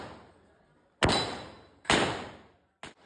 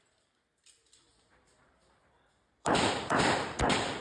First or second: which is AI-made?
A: second